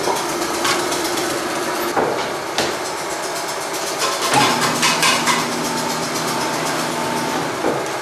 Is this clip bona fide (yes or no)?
yes